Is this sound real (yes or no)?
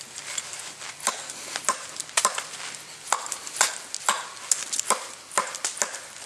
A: yes